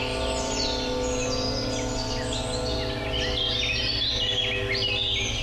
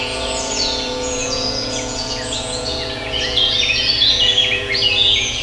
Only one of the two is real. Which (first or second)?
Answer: first